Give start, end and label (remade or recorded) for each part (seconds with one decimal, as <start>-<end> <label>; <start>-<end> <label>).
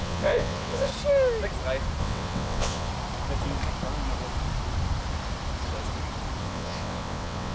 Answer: 0.0-0.9 remade; 0.9-2.0 recorded; 2.0-2.9 remade; 2.9-6.4 recorded; 6.4-7.5 remade